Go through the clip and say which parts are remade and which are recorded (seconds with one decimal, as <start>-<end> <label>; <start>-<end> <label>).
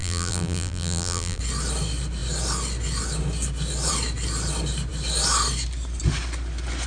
0.0-1.4 remade; 1.4-6.9 recorded